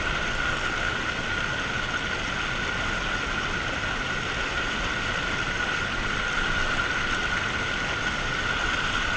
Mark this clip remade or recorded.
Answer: recorded